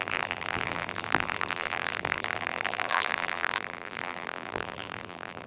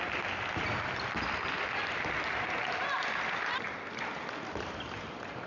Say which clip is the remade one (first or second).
first